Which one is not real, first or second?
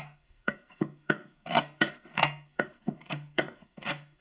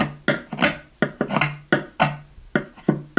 first